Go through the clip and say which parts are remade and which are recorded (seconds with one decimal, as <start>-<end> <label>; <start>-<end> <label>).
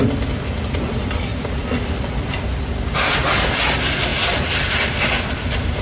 0.0-5.8 recorded